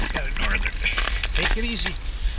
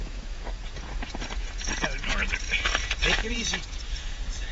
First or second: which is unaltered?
first